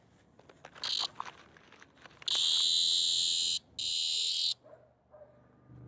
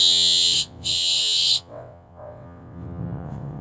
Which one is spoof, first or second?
second